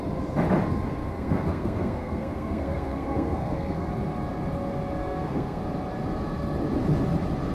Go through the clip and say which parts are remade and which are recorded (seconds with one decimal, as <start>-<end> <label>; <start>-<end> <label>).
0.0-1.0 recorded; 1.0-3.9 remade; 3.9-5.0 recorded; 5.0-5.6 remade; 5.6-7.5 recorded